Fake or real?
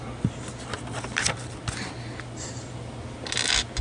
real